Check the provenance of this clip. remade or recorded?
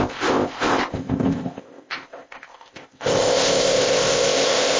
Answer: remade